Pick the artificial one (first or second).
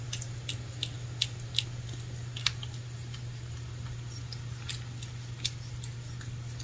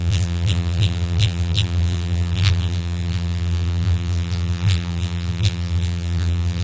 second